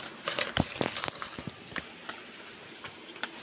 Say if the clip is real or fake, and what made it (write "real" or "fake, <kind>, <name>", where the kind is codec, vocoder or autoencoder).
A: real